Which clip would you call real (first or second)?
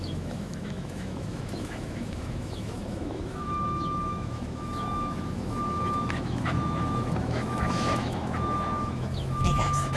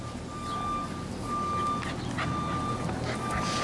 second